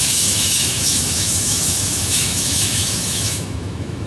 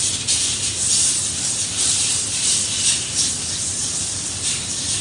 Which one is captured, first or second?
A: second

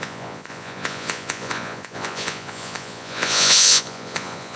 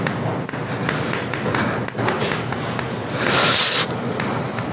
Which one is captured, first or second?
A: second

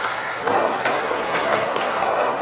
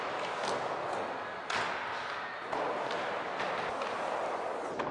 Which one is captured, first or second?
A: second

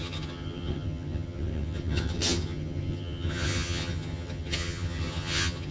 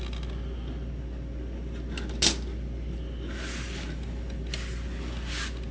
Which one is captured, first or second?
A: second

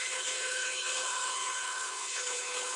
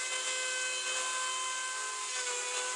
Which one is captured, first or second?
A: second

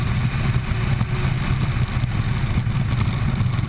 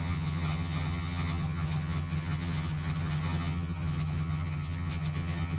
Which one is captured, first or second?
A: first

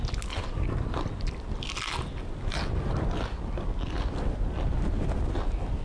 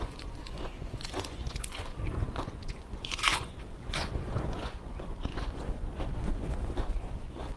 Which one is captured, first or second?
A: first